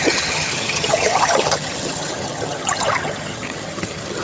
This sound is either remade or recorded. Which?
remade